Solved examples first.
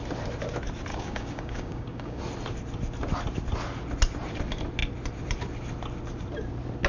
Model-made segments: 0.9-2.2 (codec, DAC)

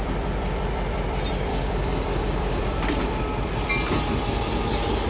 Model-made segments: 1.5-2.6 (codec, DAC)

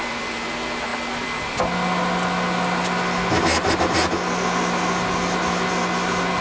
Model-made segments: none

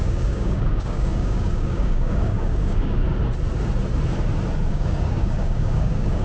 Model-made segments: 0.0-3.0 (codec, DAC); 4.7-6.2

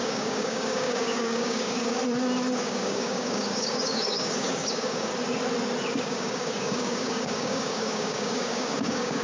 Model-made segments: 0.0-2.0 (codec, DAC); 2.6-5.1; 6.0-9.2

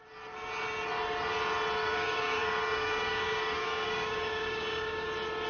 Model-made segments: 1.8-5.1 (codec, DAC)